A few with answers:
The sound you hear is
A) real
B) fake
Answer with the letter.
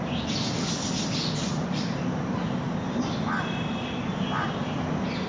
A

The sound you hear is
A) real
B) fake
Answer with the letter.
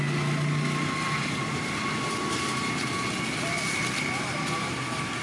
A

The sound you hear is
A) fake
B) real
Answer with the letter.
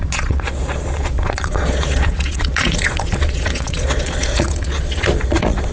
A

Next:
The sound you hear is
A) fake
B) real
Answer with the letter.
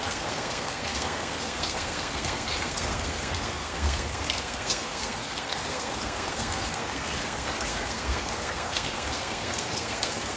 A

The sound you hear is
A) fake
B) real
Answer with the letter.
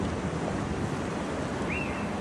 B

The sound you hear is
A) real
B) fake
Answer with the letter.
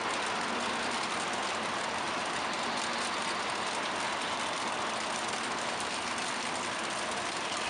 A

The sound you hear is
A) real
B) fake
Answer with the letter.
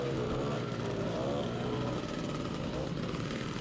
A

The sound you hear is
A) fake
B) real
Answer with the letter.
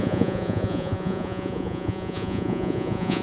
A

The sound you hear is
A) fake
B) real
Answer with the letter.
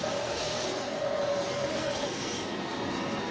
A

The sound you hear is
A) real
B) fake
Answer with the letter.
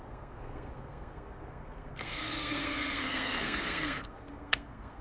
B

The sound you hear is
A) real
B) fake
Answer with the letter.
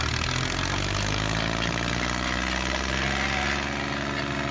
A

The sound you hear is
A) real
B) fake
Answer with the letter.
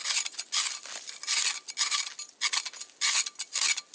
A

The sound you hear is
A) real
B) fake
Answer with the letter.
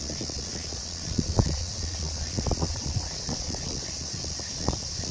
B